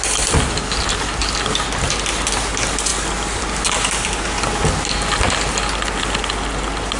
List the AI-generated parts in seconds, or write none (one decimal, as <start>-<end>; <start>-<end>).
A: none